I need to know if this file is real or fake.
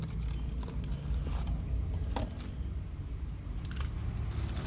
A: real